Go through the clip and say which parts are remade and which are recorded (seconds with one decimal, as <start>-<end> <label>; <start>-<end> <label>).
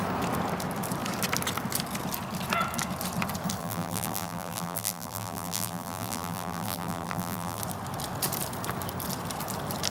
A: 0.0-3.6 recorded; 3.6-7.6 remade; 7.6-9.9 recorded